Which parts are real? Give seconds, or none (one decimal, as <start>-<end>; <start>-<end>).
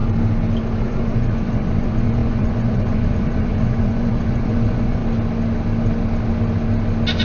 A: 0.0-0.8; 5.0-7.2